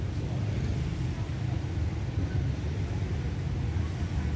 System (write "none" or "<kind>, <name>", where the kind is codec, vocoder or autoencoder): none